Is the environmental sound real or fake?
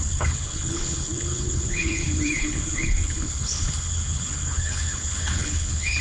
fake